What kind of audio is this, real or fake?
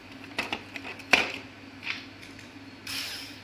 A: real